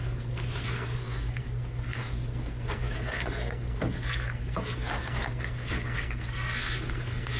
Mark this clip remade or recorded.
remade